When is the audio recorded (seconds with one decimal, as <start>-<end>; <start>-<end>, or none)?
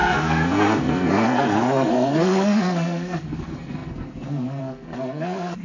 none